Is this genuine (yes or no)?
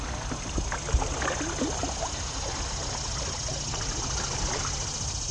yes